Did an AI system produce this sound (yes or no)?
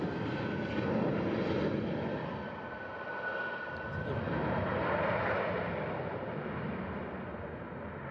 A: no